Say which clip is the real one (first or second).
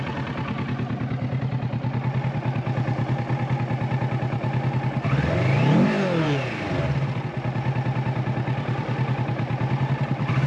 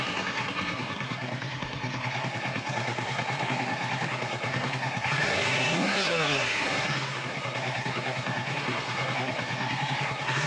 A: first